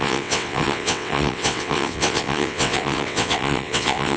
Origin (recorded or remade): remade